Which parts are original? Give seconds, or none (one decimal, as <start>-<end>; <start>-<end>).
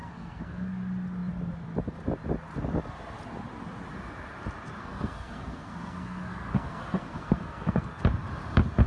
0.7-4.8; 8.0-8.9